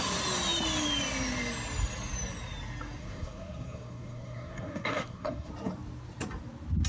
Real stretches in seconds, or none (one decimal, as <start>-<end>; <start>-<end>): 0.0-3.0; 5.5-6.9